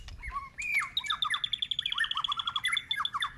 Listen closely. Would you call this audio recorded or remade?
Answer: recorded